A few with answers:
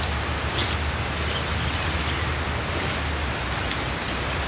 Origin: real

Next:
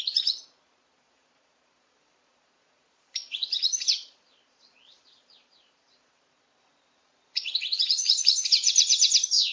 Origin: fake